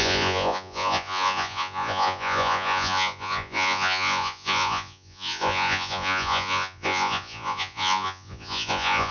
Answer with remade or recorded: remade